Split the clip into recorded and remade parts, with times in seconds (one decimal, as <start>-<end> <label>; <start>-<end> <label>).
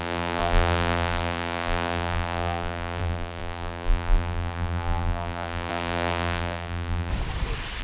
0.0-7.1 remade; 7.1-7.8 recorded